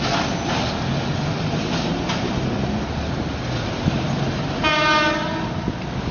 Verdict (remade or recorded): recorded